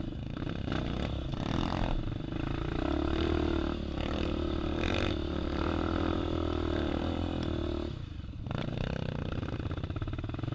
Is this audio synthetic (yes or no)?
no